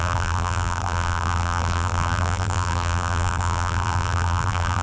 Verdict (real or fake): fake